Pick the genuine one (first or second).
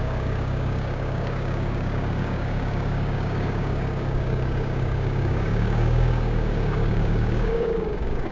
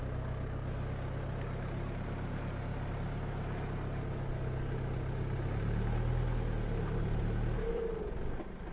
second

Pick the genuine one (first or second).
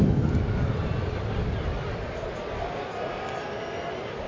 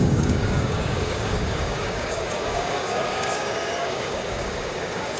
first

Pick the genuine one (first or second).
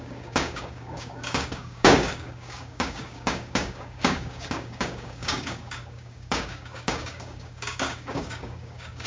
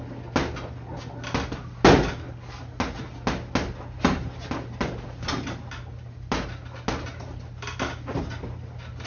second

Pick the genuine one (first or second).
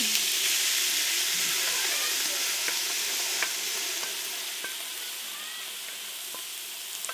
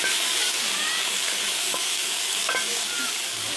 first